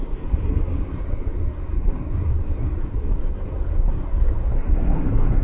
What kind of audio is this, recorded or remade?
remade